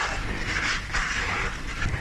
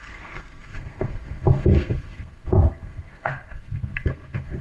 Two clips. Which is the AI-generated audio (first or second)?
second